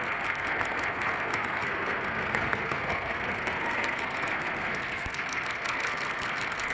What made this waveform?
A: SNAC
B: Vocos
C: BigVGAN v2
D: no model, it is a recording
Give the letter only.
A